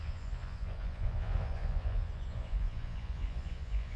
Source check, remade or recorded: remade